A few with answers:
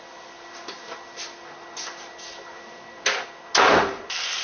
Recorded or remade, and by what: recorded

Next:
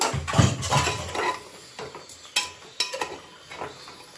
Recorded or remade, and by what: recorded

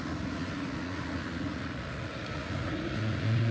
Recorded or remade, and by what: remade, vocoder, Vocos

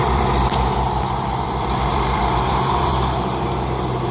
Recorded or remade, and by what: remade, vocoder, BigVGAN v2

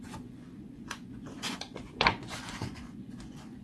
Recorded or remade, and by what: remade, vocoder, Vocos